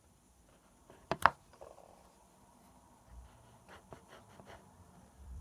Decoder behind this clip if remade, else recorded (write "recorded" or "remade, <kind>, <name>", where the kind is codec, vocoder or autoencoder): remade, vocoder, BigVGAN v2